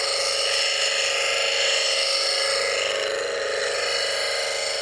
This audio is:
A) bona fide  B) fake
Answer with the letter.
A